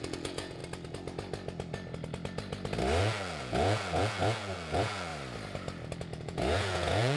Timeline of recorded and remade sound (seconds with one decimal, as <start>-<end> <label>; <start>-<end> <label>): 0.0-0.6 remade; 0.6-3.0 recorded; 3.0-5.1 remade; 5.1-6.0 recorded; 6.0-7.2 remade